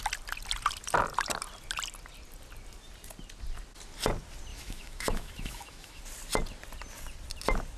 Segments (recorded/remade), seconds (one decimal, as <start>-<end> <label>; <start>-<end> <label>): 0.0-4.5 recorded; 4.5-6.0 remade; 6.0-7.8 recorded

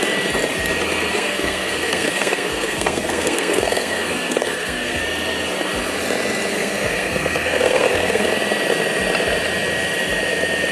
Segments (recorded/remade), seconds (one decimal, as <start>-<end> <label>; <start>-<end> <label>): 0.0-1.1 recorded; 1.1-5.0 remade; 5.0-6.5 recorded; 6.5-8.3 remade; 8.3-10.7 recorded

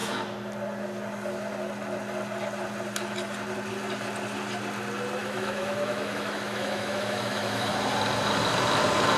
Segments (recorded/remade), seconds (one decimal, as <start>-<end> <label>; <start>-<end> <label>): 0.0-5.2 recorded; 5.2-7.7 remade; 7.7-9.2 recorded